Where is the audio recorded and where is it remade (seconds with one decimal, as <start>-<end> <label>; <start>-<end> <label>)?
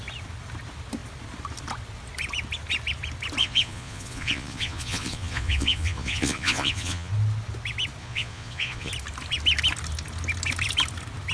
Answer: 0.0-3.4 recorded; 3.4-7.1 remade; 7.1-8.0 recorded; 8.0-8.9 remade; 8.9-11.3 recorded